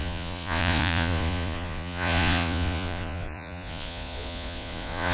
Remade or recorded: remade